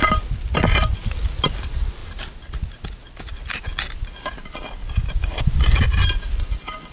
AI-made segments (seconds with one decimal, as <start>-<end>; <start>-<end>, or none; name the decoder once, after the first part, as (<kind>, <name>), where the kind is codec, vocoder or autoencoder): none